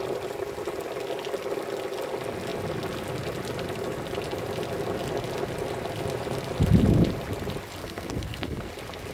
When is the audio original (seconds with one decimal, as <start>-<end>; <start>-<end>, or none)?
0.0-7.8; 8.7-9.1